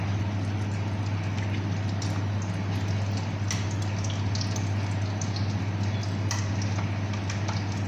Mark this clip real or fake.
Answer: real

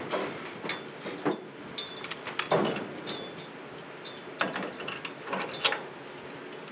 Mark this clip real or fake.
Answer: real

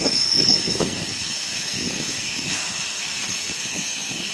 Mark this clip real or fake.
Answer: fake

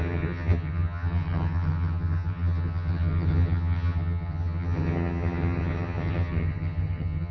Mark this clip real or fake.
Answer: fake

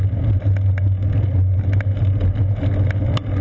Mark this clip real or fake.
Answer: real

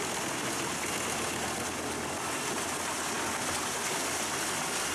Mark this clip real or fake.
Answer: real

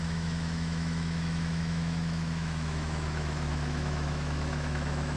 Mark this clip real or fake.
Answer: fake